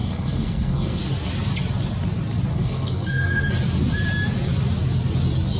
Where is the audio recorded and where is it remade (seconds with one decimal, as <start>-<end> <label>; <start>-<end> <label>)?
0.0-1.0 remade; 1.0-2.5 recorded; 2.5-3.5 remade; 3.5-5.6 recorded

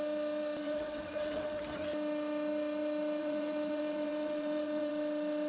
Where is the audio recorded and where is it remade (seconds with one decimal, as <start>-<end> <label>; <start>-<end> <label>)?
0.0-0.6 recorded; 0.6-1.6 remade; 1.6-3.2 recorded; 3.2-4.9 remade; 4.9-5.5 recorded

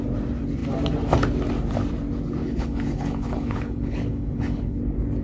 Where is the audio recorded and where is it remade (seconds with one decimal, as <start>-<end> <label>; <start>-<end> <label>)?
0.0-2.4 recorded; 2.4-4.8 remade; 4.8-5.2 recorded

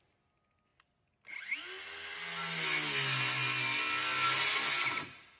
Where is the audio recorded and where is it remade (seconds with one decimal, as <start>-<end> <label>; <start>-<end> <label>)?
0.0-5.4 recorded

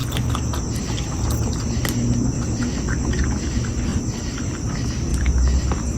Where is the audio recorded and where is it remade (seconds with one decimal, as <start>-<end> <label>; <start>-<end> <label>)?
0.0-3.9 recorded; 3.9-4.6 remade; 4.6-5.1 recorded; 5.1-5.6 remade; 5.6-6.0 recorded

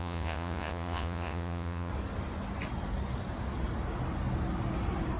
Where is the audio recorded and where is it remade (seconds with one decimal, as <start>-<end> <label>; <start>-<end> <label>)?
0.0-1.9 remade; 1.9-5.2 recorded

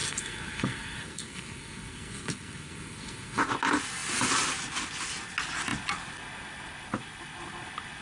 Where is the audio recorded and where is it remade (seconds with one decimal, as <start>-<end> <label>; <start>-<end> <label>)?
0.0-3.4 remade; 3.4-8.0 recorded